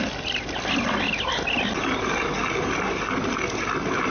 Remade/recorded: recorded